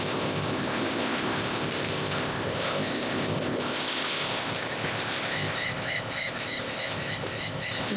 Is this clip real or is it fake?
fake